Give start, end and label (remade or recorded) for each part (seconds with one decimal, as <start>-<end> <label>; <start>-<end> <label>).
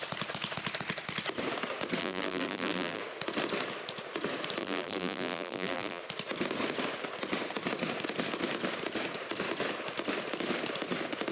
0.0-2.0 recorded; 2.0-3.0 remade; 3.0-4.6 recorded; 4.6-6.0 remade; 6.0-11.3 recorded